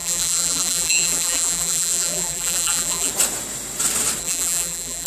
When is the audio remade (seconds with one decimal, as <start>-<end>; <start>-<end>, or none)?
0.0-3.1; 4.2-5.1